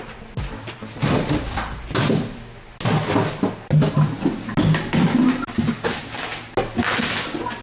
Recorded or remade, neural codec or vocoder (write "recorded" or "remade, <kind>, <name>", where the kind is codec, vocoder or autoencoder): recorded